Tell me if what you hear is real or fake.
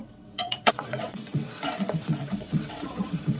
fake